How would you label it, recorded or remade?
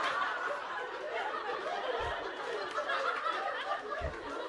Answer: recorded